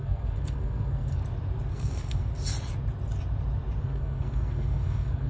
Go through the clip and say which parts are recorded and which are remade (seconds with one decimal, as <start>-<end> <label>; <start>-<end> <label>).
0.0-1.2 remade; 1.2-1.7 recorded; 1.7-2.3 remade; 2.3-3.8 recorded; 3.8-5.3 remade